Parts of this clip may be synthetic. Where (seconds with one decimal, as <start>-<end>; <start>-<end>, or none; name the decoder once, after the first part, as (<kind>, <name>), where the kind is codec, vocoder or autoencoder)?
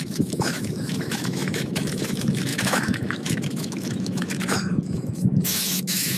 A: 0.0-6.2 (autoencoder, DAC-VAE)